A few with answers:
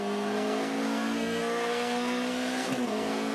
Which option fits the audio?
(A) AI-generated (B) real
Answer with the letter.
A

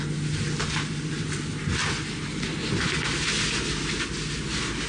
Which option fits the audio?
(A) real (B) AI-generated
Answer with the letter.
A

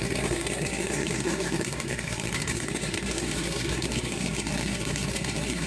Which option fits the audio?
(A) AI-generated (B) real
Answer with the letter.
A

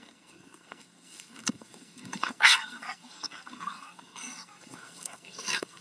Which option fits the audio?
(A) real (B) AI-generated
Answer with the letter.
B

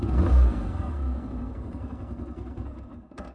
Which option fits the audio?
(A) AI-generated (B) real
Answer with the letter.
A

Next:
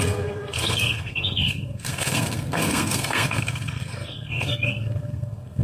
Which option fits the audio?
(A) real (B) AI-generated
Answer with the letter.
B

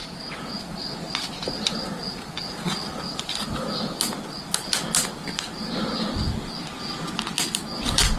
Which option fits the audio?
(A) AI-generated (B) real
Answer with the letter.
B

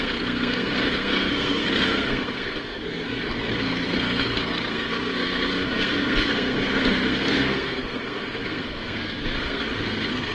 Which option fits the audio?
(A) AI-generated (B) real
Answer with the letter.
A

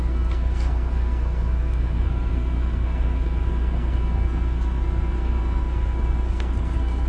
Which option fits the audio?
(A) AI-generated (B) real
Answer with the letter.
A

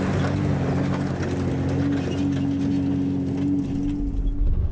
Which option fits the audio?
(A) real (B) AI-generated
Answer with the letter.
A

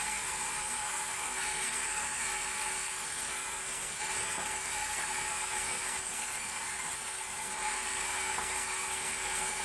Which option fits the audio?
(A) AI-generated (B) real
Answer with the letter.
A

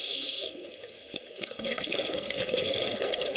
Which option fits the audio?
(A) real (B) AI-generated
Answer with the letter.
B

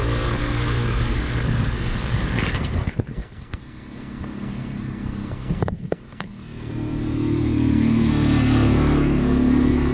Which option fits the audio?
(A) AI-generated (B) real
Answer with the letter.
A